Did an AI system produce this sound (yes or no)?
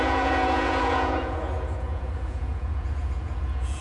yes